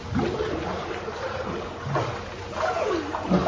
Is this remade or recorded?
recorded